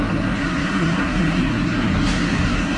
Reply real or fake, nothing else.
fake